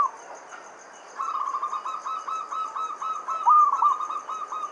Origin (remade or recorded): recorded